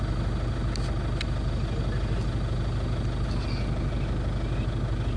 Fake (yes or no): no